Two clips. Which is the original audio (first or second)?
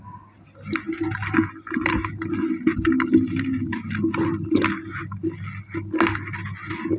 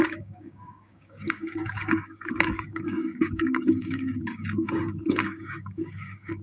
first